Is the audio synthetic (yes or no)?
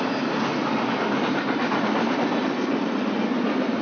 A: no